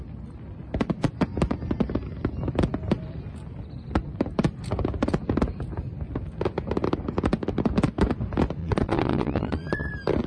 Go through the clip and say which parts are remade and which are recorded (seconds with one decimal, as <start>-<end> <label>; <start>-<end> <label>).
0.0-8.6 recorded; 8.6-9.9 remade; 9.9-10.3 recorded